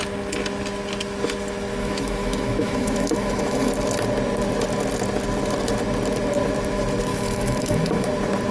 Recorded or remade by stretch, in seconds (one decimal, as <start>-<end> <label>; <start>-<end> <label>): 0.0-1.8 recorded; 1.8-3.7 remade; 3.7-7.1 recorded; 7.1-8.1 remade; 8.1-8.5 recorded